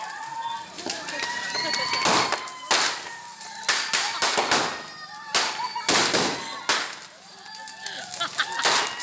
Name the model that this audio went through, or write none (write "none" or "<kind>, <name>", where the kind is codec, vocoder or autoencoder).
none